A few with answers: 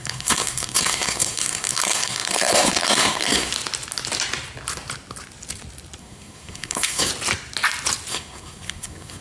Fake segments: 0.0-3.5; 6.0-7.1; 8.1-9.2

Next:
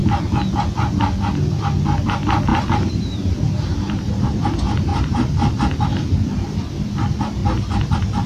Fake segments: 2.5-4.4; 4.9-5.5

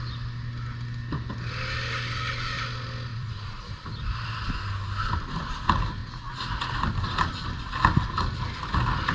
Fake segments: 3.1-3.6; 6.0-6.7

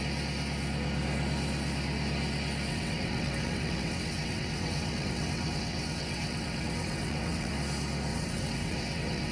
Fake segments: 2.7-7.5; 8.1-9.3

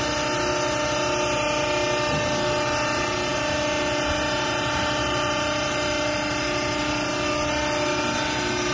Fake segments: none

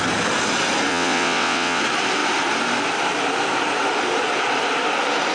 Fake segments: 0.9-1.8

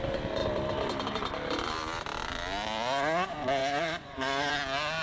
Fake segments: 3.6-4.5

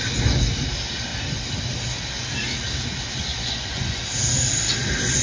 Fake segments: 3.3-4.0